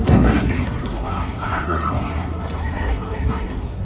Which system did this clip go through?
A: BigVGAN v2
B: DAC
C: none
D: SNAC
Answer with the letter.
D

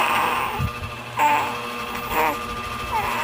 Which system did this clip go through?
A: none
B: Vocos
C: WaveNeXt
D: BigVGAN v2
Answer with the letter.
A